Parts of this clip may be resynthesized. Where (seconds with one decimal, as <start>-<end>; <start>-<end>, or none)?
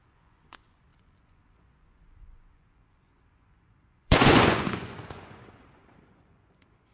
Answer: 0.0-6.9